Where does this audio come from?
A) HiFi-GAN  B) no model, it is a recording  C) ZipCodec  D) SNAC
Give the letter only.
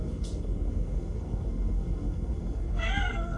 D